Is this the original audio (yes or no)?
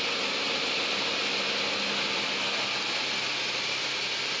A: yes